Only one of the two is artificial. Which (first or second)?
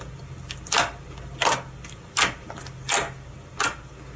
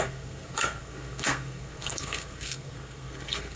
second